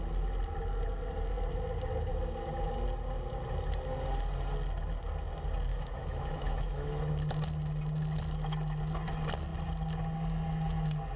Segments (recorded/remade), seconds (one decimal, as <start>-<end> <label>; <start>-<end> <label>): 0.0-5.7 recorded; 5.7-7.0 remade; 7.0-11.2 recorded